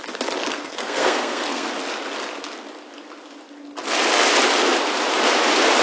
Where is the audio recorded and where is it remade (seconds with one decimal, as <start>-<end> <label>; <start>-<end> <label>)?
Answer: 0.0-0.4 recorded; 0.4-1.7 remade; 1.7-5.8 recorded